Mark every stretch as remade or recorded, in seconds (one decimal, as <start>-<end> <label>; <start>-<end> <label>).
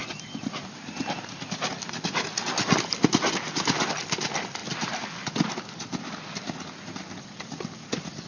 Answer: 0.0-1.7 remade; 1.7-8.3 recorded